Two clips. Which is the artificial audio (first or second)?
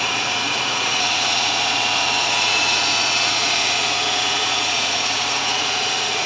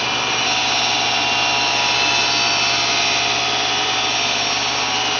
first